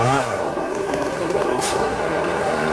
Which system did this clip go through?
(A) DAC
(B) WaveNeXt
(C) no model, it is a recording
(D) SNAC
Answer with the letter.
D